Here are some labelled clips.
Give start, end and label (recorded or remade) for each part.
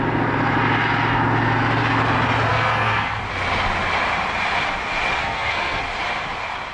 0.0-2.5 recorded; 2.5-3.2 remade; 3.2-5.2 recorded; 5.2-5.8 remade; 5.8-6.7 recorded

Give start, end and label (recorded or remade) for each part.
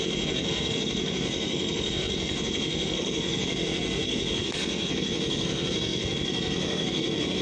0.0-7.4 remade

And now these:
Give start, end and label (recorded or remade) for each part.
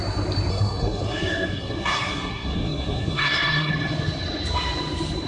0.0-0.5 recorded; 0.5-3.7 remade; 3.7-5.3 recorded